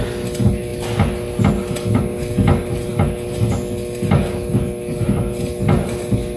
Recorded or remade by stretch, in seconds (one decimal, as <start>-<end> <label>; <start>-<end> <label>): 0.0-6.4 recorded